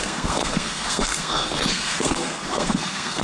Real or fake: fake